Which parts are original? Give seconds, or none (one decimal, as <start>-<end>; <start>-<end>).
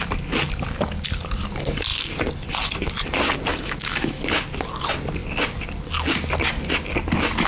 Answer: 0.0-3.5; 4.2-7.5